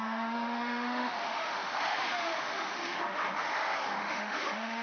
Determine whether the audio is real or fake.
fake